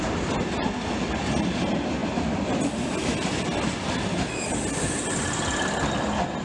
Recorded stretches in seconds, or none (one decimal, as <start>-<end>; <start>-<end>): 0.0-6.4